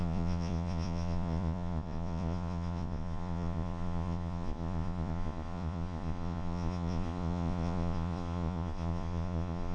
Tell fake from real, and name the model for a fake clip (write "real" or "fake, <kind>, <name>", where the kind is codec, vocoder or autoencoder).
fake, vocoder, Vocos